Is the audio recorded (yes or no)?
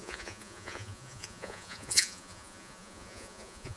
no